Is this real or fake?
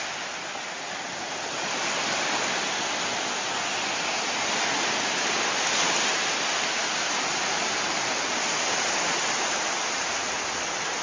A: real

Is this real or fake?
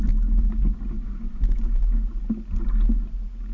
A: real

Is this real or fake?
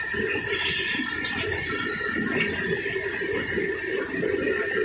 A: real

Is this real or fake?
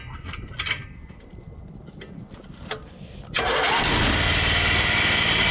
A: real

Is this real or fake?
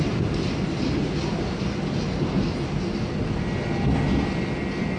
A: real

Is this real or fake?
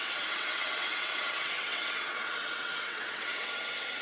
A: fake